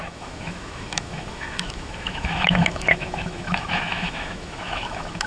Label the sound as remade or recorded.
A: remade